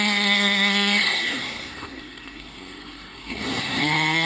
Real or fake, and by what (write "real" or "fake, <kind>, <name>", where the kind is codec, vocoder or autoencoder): fake, codec, SNAC